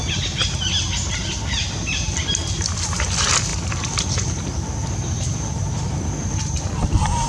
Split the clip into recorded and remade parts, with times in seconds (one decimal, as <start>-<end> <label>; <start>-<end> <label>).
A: 0.0-7.3 recorded